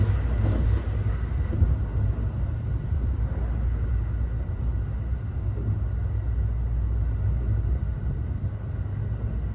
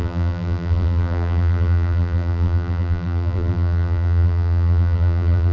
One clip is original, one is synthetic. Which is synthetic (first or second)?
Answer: second